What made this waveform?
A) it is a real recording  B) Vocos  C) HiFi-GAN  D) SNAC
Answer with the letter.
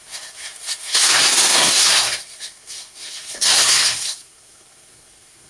D